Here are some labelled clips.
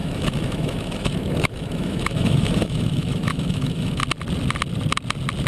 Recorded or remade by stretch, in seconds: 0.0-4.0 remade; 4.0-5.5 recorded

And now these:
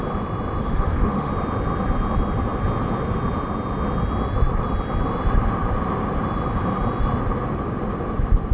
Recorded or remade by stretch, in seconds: 0.0-0.6 recorded; 0.6-1.3 remade; 1.3-8.5 recorded

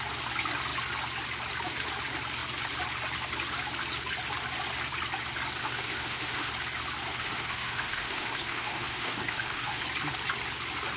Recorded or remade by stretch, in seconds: 0.0-5.6 recorded; 5.6-6.5 remade; 6.5-7.1 recorded; 7.1-9.8 remade; 9.8-11.0 recorded

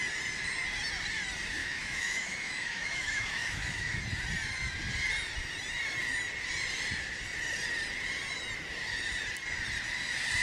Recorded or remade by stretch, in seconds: 0.0-1.6 recorded; 1.6-4.0 remade; 4.0-10.4 recorded

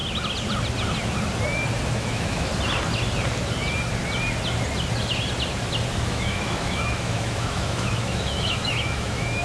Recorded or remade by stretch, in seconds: 0.0-1.9 recorded; 1.9-2.5 remade; 2.5-6.0 recorded; 6.0-9.4 remade

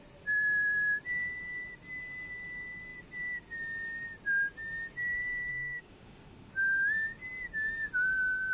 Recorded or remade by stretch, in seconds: 0.0-5.5 recorded; 5.5-6.5 remade; 6.5-8.5 recorded

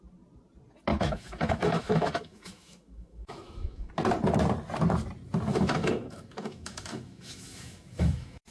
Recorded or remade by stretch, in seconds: 0.0-0.9 recorded; 0.9-3.9 remade; 3.9-5.5 recorded; 5.5-8.5 remade

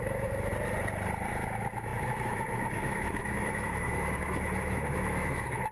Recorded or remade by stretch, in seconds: 0.0-0.5 remade; 0.5-1.3 recorded; 1.3-5.7 remade